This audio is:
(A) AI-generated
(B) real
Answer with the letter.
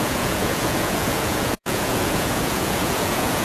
A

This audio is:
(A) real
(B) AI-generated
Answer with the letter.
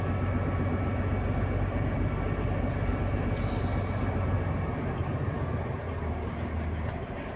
A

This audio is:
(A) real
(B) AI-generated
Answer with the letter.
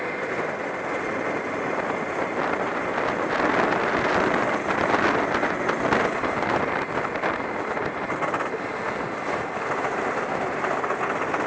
A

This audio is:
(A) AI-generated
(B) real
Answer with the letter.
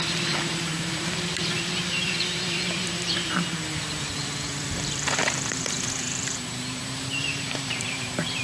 A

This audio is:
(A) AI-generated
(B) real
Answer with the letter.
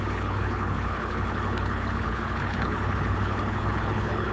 A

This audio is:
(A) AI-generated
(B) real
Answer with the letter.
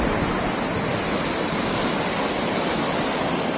B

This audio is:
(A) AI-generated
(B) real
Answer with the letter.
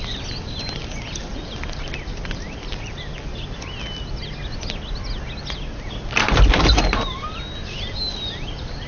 B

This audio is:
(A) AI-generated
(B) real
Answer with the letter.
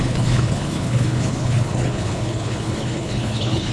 A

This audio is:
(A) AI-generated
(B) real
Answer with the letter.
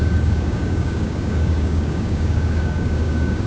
A